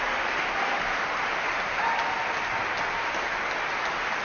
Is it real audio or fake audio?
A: real